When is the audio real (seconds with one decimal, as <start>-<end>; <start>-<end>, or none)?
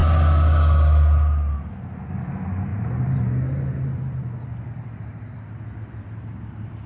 0.0-6.9